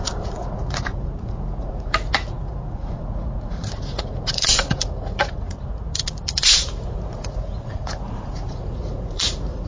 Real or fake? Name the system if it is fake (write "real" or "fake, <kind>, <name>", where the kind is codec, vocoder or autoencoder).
fake, vocoder, Vocos